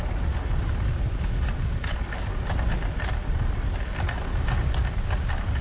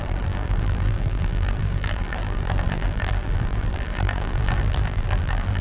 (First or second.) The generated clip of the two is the second